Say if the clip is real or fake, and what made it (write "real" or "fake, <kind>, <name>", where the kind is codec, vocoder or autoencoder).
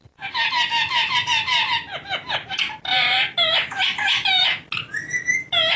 real